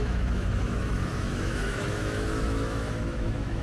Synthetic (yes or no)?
yes